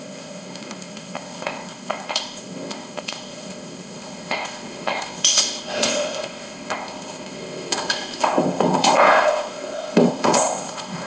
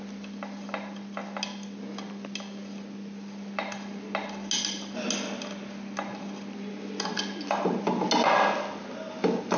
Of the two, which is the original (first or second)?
second